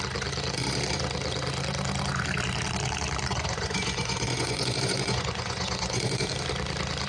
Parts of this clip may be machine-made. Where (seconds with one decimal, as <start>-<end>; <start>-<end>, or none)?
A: 3.3-6.3